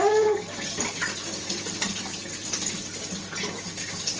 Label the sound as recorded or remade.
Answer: recorded